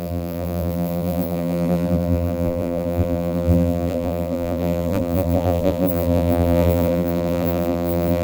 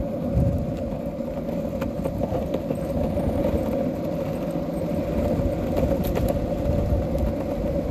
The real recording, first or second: second